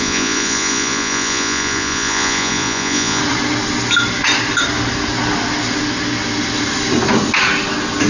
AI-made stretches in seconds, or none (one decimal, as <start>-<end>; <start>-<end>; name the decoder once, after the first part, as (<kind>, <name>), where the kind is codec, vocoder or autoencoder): 0.0-3.2 (vocoder, Vocos)